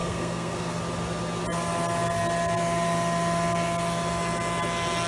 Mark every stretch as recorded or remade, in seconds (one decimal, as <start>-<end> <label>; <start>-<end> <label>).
0.0-0.8 remade; 0.8-5.1 recorded